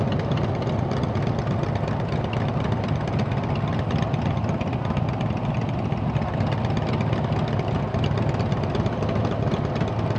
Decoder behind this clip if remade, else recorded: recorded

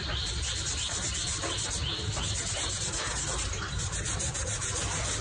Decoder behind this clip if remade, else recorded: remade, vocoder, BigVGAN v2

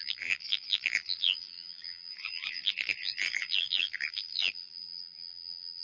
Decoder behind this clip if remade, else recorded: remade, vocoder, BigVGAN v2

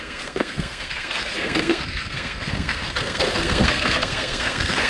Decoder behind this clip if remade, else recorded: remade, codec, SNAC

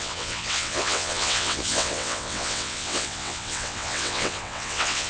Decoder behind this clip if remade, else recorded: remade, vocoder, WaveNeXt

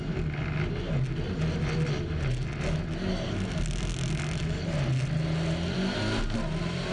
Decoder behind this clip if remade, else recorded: recorded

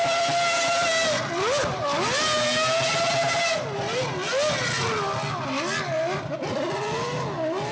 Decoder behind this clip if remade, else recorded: recorded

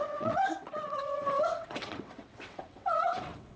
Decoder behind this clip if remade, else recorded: remade, vocoder, WaveNeXt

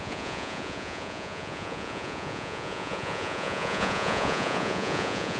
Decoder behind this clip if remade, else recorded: remade, vocoder, Vocos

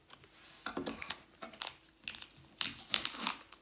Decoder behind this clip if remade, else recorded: recorded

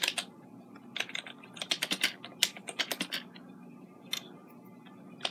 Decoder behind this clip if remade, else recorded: recorded